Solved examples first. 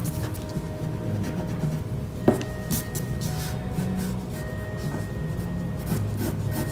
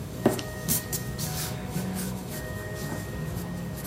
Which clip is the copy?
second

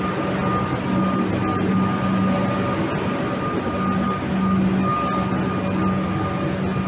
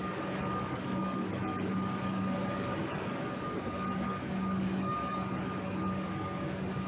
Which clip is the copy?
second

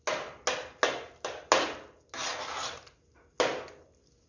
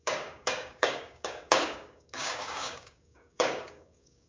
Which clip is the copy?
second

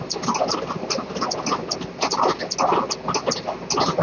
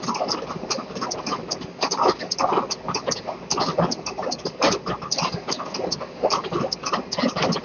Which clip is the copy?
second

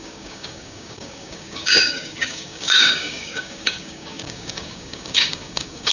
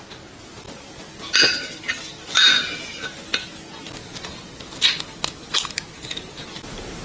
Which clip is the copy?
first